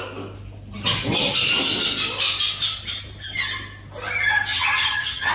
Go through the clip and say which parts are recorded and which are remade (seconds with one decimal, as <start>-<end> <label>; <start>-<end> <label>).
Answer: 0.0-4.5 recorded; 4.5-5.3 remade